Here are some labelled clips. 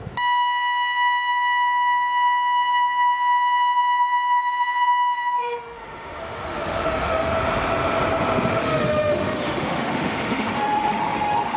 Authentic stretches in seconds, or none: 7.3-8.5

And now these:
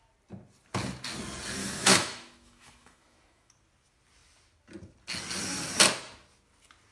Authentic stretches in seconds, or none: 0.0-1.6; 3.5-6.9

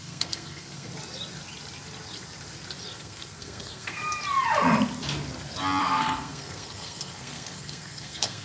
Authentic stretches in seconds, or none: 0.9-2.8; 4.0-5.8